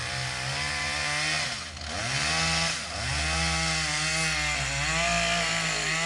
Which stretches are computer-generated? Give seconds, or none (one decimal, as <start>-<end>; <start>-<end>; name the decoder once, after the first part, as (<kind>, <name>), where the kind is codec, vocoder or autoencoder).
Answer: none